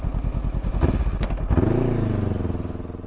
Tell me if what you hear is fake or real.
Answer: real